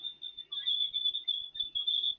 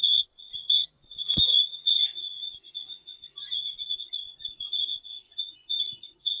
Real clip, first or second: first